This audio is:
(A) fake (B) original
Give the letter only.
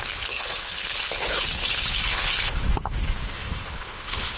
A